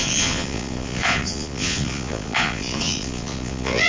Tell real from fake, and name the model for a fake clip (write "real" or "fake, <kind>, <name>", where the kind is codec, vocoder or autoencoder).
fake, vocoder, Vocos